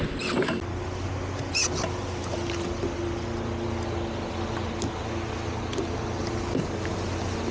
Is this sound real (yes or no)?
yes